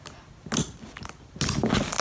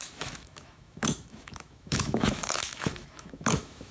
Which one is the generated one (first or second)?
second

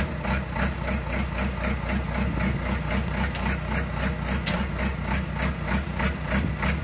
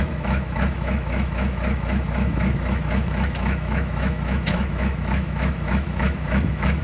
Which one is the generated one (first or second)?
second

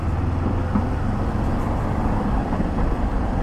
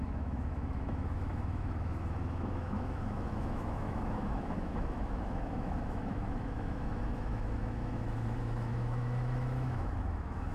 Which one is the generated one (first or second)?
second